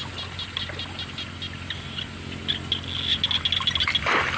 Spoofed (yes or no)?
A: no